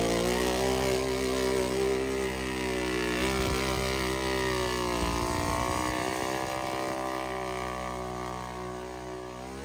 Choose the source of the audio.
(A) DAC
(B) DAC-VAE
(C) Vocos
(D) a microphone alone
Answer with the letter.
D